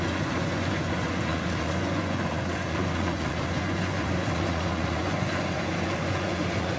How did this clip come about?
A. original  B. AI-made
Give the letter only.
B